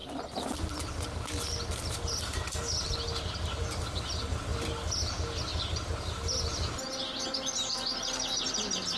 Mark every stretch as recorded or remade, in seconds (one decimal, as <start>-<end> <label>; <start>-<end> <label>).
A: 0.0-9.0 recorded